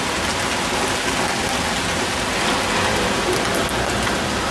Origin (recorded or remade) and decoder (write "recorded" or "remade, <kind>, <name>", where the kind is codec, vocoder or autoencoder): recorded